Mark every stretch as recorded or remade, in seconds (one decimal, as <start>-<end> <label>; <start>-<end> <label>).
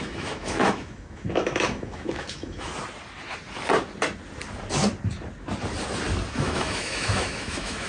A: 0.0-2.7 remade; 2.7-6.3 recorded; 6.3-7.9 remade